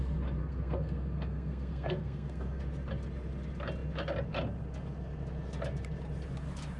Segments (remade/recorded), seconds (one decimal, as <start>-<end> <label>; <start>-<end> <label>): 0.0-0.4 recorded; 0.4-2.6 remade; 2.6-6.8 recorded